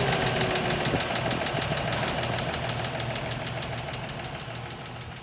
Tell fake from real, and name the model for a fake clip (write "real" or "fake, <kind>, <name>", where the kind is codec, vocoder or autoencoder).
real